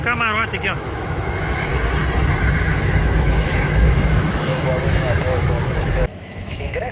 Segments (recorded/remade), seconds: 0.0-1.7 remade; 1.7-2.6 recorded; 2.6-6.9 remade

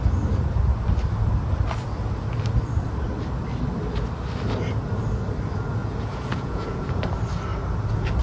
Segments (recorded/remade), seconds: 0.0-5.8 recorded; 5.8-7.0 remade; 7.0-8.2 recorded

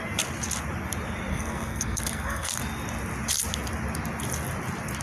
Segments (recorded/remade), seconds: 0.0-1.3 recorded; 1.3-2.5 remade; 2.5-5.0 recorded

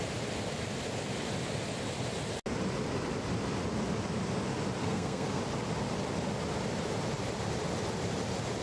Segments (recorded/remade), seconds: 0.0-4.8 recorded; 4.8-5.4 remade; 5.4-8.6 recorded

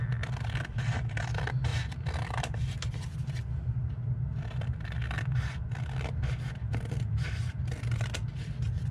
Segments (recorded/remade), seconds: 0.0-8.9 recorded